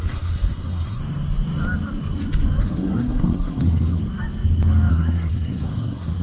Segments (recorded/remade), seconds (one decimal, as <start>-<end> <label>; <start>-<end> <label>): 0.0-1.0 remade; 1.0-2.6 recorded; 2.6-4.0 remade; 4.0-4.9 recorded; 4.9-6.2 remade